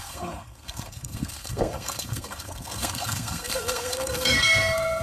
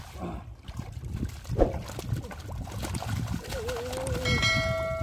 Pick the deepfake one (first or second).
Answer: first